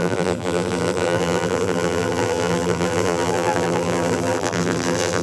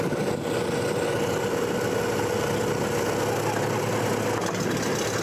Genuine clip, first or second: second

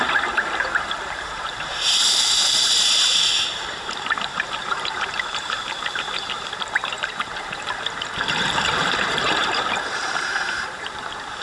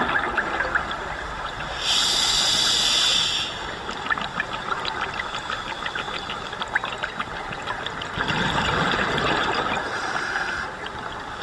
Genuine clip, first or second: second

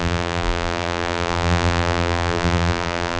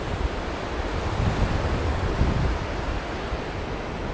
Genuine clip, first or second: second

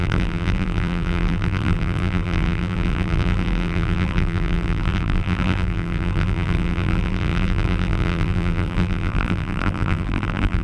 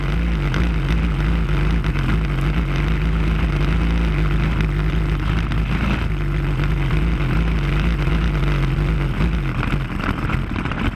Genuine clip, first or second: second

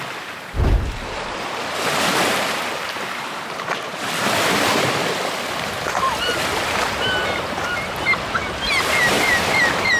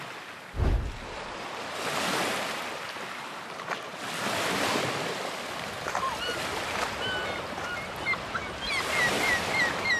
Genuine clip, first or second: second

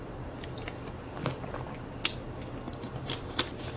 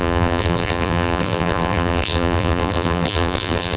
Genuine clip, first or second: first